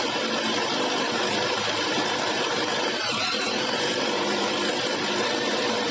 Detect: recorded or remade remade